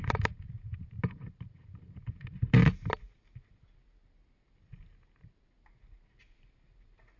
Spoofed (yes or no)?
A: no